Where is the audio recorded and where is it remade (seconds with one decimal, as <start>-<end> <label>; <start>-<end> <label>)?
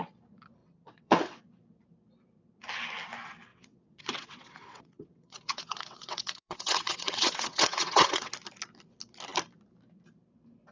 0.0-0.6 recorded; 0.6-1.4 remade; 1.4-3.5 recorded; 3.5-8.3 remade; 8.3-10.7 recorded